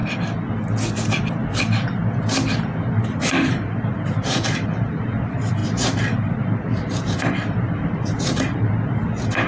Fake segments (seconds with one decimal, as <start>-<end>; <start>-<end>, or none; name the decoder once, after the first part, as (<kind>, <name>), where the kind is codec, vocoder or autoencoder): 2.8-9.5 (vocoder, BigVGAN v2)